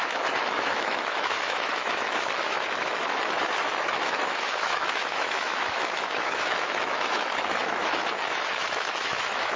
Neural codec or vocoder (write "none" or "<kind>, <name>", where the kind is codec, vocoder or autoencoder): autoencoder, DAC-VAE